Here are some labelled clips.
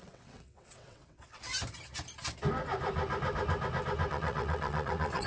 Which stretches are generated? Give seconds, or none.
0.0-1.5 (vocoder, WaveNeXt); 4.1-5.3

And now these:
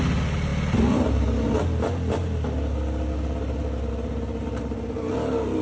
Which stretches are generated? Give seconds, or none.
none

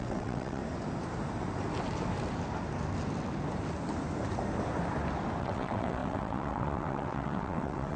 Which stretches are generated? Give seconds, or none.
0.0-0.6 (vocoder, WaveNeXt); 5.4-8.0

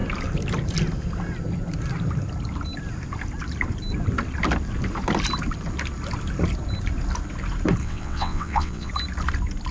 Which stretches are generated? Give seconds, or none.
7.8-8.9 (vocoder, WaveNeXt)

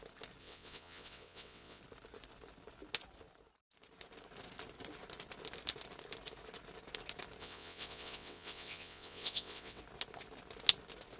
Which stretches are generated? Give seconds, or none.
0.4-1.8 (vocoder, WaveNeXt); 7.4-9.8